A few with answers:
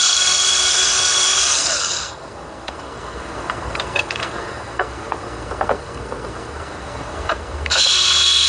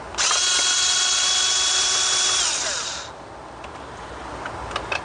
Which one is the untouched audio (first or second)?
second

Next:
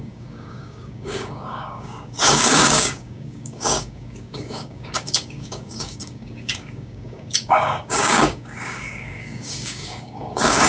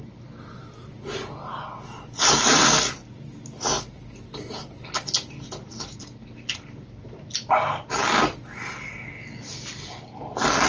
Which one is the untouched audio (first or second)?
second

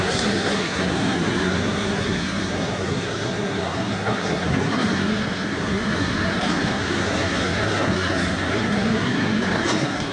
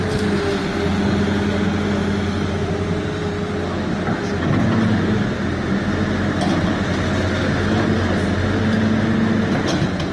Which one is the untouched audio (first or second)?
second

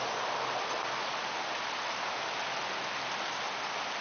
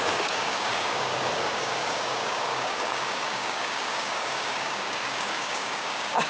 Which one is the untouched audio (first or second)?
first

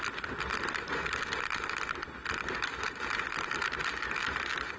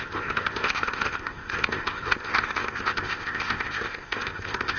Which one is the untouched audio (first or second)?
first